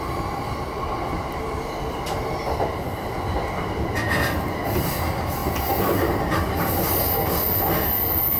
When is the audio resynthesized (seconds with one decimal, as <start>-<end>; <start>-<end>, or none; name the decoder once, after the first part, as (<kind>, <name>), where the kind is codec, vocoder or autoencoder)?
none